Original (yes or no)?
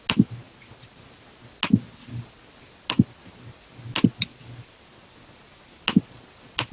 yes